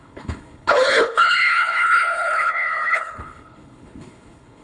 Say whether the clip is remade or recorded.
remade